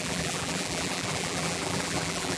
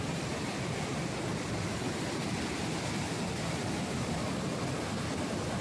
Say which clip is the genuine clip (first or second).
second